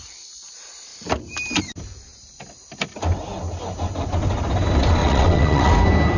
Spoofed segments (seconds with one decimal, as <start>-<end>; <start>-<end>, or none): 5.0-5.7